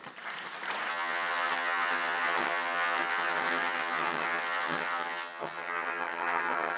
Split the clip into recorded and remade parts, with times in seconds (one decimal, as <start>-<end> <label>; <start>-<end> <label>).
0.0-0.9 recorded; 0.9-6.8 remade